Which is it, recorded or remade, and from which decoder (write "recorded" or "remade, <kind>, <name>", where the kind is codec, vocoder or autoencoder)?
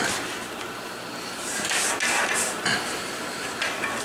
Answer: recorded